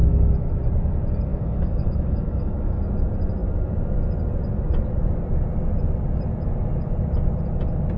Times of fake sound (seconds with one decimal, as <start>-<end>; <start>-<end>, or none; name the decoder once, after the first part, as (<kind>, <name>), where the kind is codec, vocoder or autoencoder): 0.0-0.5 (autoencoder, DAC-VAE); 1.3-2.8